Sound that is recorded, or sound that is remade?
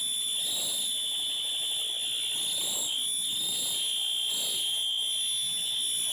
recorded